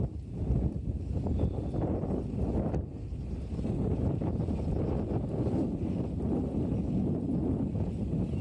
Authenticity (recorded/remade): recorded